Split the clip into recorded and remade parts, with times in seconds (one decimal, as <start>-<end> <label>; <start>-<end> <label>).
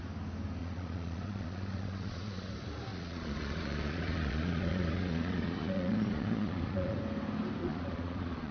0.0-0.6 recorded; 0.6-2.5 remade; 2.5-2.9 recorded; 2.9-7.0 remade; 7.0-7.6 recorded; 7.6-8.5 remade